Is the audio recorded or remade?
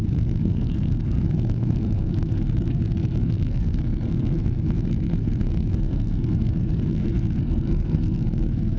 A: remade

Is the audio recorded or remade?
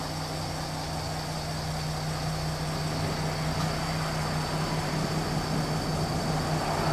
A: recorded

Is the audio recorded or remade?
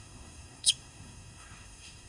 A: remade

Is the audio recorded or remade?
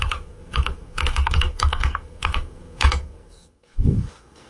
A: remade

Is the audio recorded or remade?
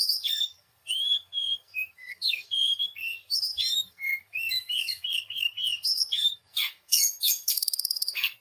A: remade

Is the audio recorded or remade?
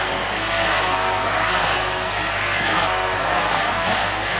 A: remade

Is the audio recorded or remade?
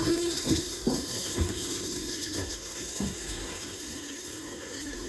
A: remade